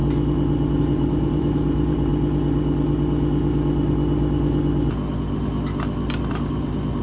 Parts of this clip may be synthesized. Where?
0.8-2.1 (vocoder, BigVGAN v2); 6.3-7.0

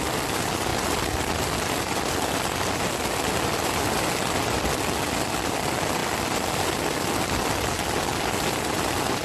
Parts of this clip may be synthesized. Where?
none

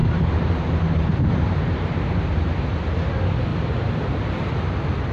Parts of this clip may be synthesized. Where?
0.0-3.1 (vocoder, BigVGAN v2); 3.5-4.2

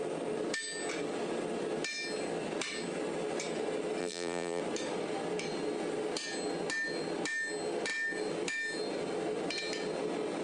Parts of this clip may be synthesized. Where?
4.0-4.6 (vocoder, BigVGAN v2)

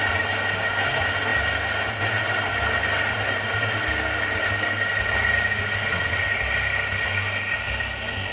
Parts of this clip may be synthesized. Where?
none